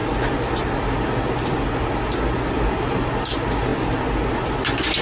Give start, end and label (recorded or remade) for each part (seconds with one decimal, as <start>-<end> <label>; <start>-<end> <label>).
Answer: 0.0-5.0 recorded